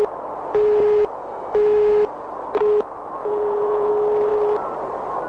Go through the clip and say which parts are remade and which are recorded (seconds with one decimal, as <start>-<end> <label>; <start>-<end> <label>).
0.0-3.2 recorded; 3.2-3.9 remade; 3.9-5.3 recorded